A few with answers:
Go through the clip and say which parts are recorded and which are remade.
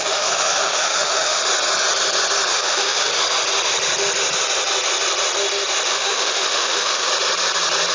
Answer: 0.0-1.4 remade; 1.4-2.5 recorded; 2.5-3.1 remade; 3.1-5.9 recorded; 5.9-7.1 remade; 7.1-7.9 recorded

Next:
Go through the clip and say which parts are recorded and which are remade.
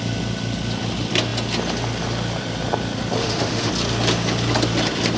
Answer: 0.0-3.2 recorded; 3.2-3.7 remade; 3.7-5.2 recorded